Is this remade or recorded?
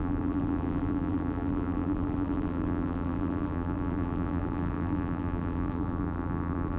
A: remade